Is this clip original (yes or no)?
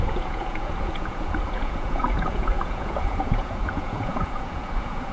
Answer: no